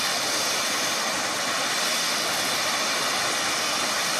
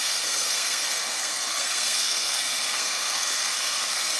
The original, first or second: first